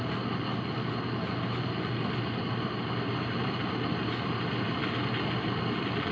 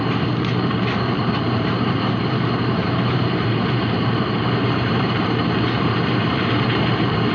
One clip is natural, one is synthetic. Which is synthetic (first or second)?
second